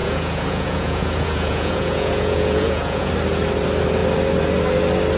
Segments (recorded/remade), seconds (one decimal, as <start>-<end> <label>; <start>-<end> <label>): 0.0-3.1 remade; 3.1-5.2 recorded